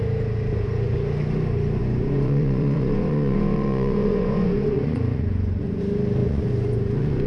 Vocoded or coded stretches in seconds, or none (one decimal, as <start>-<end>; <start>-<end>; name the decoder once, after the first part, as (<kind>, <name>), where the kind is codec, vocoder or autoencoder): 1.8-5.8 (vocoder, Vocos); 6.2-7.3